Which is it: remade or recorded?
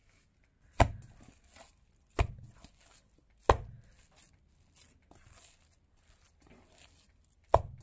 recorded